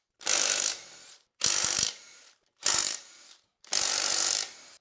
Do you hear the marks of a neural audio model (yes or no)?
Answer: yes